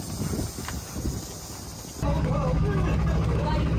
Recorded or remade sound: recorded